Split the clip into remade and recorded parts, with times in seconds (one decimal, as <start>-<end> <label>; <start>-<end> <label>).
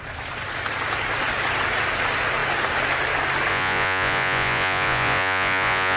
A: 0.0-3.5 recorded; 3.5-6.0 remade